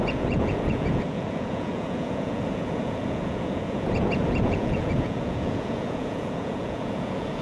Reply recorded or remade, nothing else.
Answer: remade